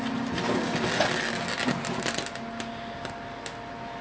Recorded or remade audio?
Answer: recorded